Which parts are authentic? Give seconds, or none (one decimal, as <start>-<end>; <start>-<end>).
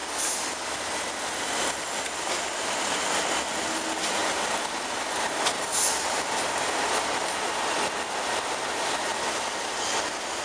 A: 0.0-10.4